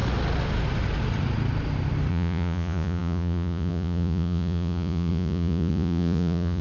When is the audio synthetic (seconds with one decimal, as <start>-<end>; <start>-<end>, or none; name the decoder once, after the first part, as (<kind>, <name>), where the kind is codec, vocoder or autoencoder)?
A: 2.1-6.6 (vocoder, Vocos)